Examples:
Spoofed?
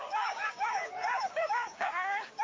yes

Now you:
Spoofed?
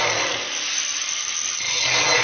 no